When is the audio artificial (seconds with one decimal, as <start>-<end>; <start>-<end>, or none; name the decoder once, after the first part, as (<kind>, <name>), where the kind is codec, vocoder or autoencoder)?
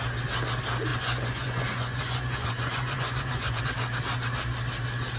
0.9-3.6 (vocoder, Vocos)